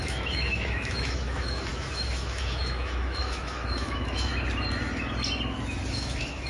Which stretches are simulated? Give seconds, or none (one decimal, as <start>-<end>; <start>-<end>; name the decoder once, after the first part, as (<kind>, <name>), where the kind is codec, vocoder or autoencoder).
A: 0.0-4.3 (autoencoder, DAC-VAE); 5.9-6.5